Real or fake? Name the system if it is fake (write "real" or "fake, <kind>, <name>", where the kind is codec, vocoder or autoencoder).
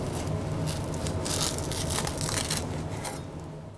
real